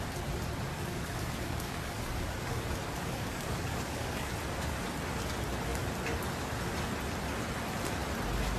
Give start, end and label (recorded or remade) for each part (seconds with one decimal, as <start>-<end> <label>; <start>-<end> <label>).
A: 0.0-0.7 recorded; 0.7-4.3 remade; 4.3-8.6 recorded